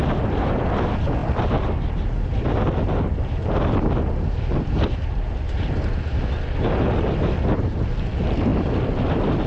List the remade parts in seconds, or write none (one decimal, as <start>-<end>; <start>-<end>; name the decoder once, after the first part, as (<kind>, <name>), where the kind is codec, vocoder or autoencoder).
1.2-6.2 (vocoder, BigVGAN v2)